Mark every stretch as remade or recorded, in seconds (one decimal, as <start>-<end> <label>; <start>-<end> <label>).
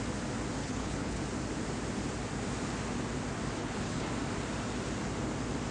0.0-0.6 recorded; 0.6-1.2 remade; 1.2-3.6 recorded; 3.6-4.1 remade; 4.1-5.7 recorded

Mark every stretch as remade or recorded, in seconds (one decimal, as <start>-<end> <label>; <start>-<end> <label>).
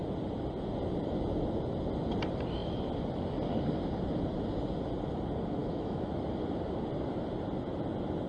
0.0-5.6 recorded; 5.6-6.1 remade; 6.1-8.3 recorded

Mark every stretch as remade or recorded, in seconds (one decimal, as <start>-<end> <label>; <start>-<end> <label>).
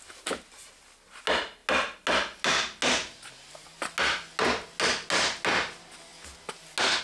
0.0-7.0 recorded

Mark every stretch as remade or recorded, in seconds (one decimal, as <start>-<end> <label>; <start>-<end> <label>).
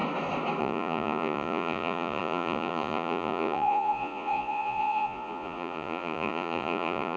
0.0-0.6 recorded; 0.6-7.2 remade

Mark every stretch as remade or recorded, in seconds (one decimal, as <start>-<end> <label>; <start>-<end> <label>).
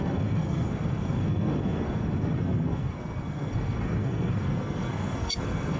0.0-5.8 remade